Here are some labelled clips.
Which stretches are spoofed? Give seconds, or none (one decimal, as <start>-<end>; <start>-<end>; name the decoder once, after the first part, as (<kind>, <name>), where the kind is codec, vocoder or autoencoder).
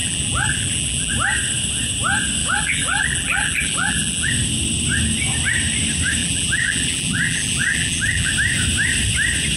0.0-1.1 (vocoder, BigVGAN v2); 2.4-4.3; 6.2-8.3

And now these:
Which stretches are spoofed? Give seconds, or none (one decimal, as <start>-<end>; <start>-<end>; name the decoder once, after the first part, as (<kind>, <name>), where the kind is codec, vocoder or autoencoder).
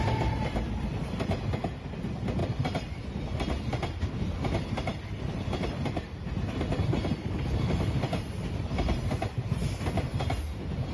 none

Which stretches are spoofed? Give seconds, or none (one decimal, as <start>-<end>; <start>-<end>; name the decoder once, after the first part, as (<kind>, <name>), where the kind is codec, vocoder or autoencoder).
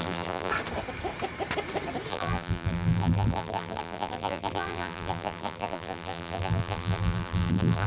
0.0-0.5 (vocoder, BigVGAN v2); 2.1-7.9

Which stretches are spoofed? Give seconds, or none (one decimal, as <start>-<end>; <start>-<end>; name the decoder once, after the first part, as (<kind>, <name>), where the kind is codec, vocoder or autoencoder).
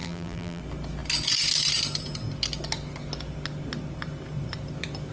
0.0-0.6 (vocoder, BigVGAN v2)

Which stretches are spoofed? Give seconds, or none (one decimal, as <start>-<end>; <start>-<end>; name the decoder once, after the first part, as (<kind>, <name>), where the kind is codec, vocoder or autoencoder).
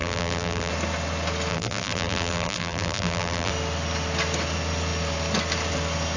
0.0-0.7 (vocoder, BigVGAN v2); 1.5-3.5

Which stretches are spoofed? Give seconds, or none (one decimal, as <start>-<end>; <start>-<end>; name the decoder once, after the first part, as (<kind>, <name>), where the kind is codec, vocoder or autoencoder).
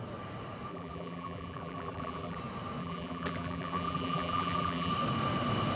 0.7-2.4 (vocoder, BigVGAN v2); 2.8-4.9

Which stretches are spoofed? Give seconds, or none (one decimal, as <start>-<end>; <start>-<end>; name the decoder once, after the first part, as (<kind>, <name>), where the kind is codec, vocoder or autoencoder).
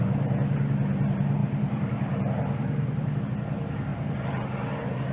1.4-3.2 (vocoder, BigVGAN v2); 3.9-4.4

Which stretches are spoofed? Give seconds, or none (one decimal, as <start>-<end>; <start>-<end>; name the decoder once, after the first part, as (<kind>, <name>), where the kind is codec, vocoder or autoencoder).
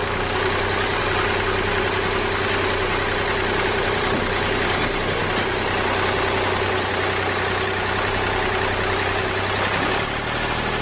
none